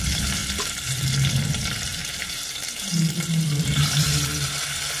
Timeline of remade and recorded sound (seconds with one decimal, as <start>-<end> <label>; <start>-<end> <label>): 0.0-0.4 remade; 0.4-1.3 recorded; 1.3-5.0 remade